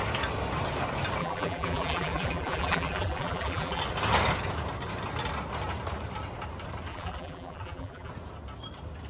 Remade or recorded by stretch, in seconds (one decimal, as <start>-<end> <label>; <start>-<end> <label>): 0.0-1.2 recorded; 1.2-3.8 remade; 3.8-6.9 recorded; 6.9-8.1 remade; 8.1-9.1 recorded